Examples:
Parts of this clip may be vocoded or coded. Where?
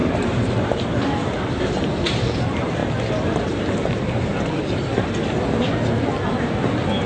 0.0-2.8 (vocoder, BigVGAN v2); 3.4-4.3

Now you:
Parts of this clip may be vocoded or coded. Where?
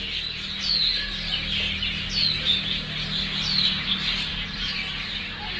4.3-5.1 (vocoder, BigVGAN v2)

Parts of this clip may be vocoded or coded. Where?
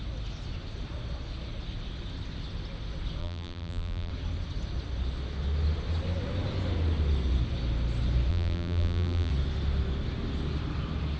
3.2-4.1 (vocoder, BigVGAN v2); 8.3-9.3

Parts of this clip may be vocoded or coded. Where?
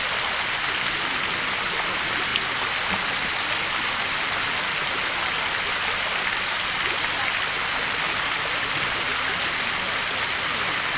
none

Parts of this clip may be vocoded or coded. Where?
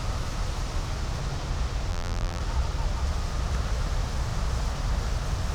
1.9-2.4 (vocoder, BigVGAN v2)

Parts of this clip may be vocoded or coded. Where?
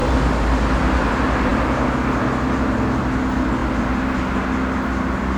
none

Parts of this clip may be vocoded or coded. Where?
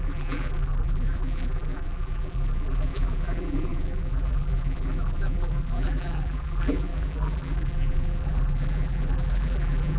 0.0-10.0 (vocoder, BigVGAN v2)